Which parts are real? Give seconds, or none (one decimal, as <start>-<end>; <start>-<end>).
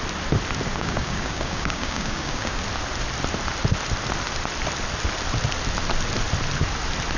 0.0-0.7; 2.6-7.2